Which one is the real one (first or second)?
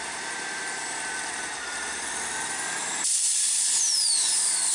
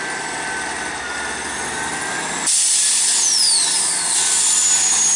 second